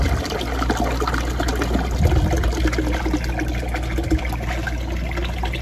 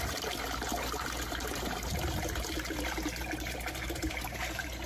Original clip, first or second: first